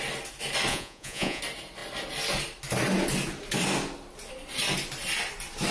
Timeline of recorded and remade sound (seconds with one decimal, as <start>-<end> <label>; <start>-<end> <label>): 0.0-0.7 recorded; 0.7-1.4 remade; 1.4-5.7 recorded